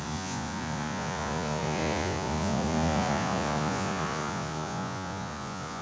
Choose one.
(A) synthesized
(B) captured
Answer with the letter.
A